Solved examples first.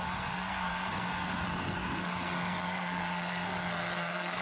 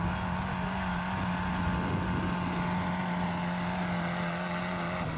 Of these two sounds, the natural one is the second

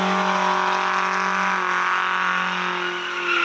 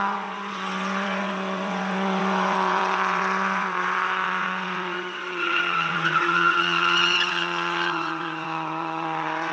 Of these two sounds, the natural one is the first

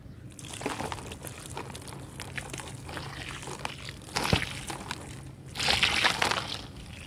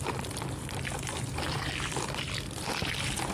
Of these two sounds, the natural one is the first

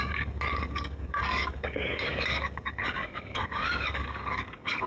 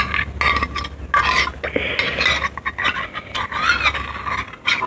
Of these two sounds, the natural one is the second